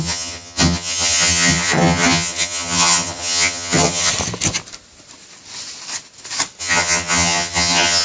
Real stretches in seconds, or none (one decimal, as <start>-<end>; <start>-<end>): 4.1-6.6